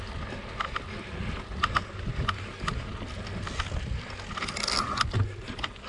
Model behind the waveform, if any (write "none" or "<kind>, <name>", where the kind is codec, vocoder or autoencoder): none